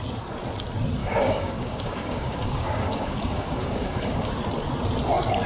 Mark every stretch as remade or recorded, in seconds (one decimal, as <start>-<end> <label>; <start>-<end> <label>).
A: 0.0-1.0 recorded; 1.0-4.3 remade; 4.3-5.5 recorded